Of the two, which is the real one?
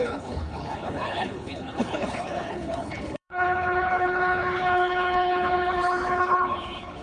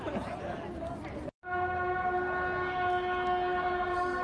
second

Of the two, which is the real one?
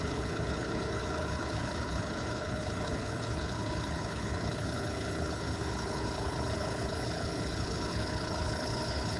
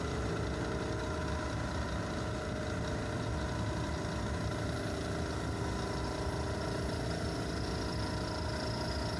second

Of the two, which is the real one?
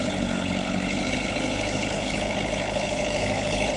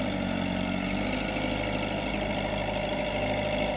second